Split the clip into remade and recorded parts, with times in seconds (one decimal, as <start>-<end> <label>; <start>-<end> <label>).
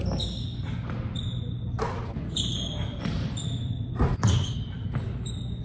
0.0-3.2 recorded; 3.2-4.3 remade; 4.3-5.6 recorded